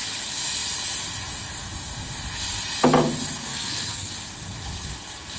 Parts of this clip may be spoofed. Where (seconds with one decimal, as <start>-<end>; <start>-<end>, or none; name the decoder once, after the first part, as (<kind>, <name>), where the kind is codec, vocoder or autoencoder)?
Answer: 3.5-4.1 (codec, SNAC)